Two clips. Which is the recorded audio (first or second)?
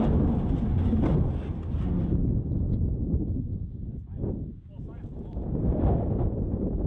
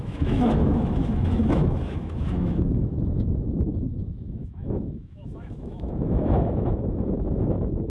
first